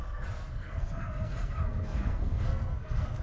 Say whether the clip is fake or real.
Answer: fake